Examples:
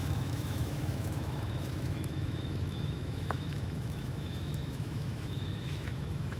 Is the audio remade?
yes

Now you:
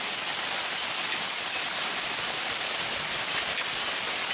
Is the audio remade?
no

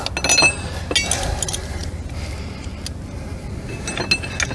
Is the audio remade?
no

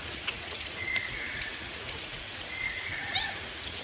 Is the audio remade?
yes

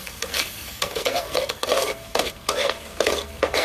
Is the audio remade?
yes